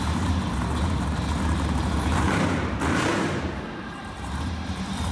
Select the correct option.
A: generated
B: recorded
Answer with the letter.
A